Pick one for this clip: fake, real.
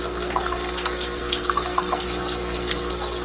fake